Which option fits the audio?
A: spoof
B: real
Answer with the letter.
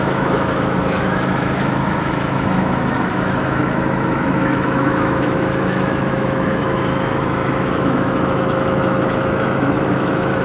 A